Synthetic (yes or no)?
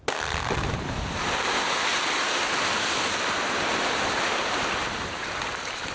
no